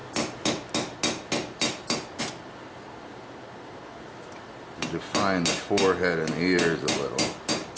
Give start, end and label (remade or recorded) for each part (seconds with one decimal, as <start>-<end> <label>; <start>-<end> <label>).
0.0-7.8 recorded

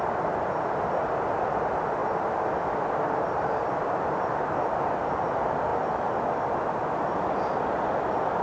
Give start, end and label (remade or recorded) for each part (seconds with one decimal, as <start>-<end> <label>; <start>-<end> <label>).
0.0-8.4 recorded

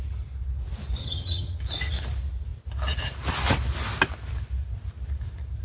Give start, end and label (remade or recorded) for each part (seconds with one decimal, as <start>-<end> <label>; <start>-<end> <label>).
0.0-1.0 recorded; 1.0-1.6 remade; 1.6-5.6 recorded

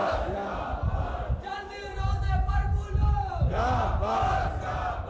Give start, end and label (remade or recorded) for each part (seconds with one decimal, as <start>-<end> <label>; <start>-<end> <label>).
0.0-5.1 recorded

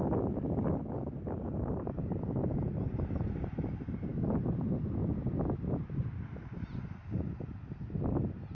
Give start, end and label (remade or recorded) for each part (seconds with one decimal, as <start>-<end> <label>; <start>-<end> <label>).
0.0-8.5 recorded

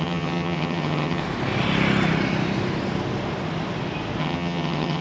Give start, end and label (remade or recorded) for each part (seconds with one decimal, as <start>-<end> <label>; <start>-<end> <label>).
0.0-1.2 remade; 1.2-4.2 recorded; 4.2-5.0 remade

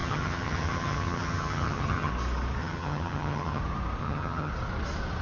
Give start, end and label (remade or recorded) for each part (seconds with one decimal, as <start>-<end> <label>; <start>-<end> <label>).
0.0-2.1 remade; 2.1-2.6 recorded; 2.6-3.6 remade; 3.6-4.0 recorded; 4.0-4.5 remade; 4.5-5.2 recorded